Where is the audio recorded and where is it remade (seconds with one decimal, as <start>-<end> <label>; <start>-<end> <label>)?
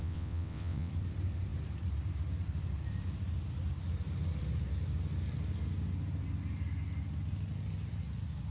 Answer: 0.0-0.9 remade; 0.9-8.5 recorded